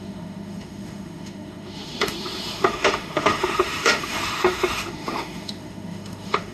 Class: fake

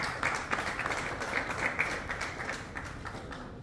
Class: real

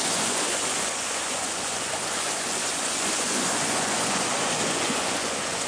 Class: fake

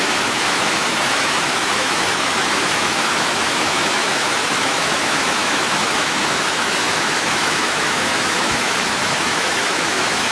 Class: fake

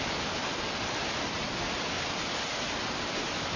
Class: real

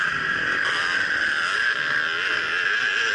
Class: real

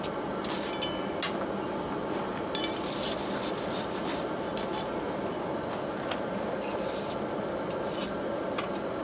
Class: real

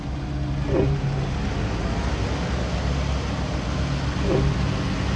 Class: real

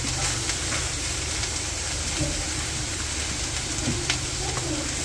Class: fake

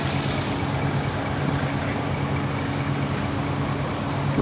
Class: real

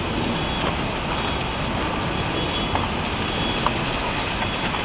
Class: real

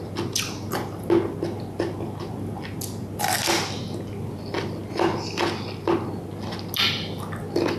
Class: real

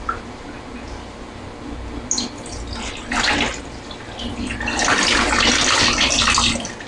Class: real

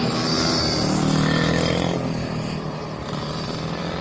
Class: real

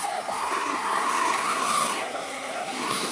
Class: fake